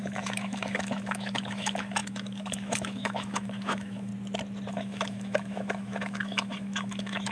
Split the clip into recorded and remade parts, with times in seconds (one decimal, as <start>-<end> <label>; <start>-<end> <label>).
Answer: 0.0-4.1 remade; 4.1-4.7 recorded; 4.7-7.3 remade